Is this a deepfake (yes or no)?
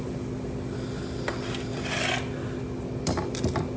no